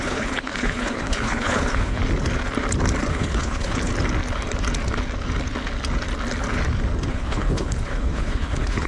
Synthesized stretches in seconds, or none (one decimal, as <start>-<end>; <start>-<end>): 0.0-2.0; 3.1-3.9; 7.1-8.9